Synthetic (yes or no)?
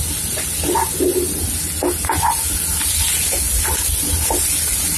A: no